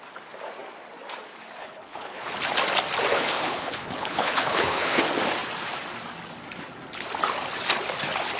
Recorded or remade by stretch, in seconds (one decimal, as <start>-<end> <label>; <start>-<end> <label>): 0.0-1.6 recorded; 1.6-2.2 remade; 2.2-3.1 recorded; 3.1-5.0 remade; 5.0-8.4 recorded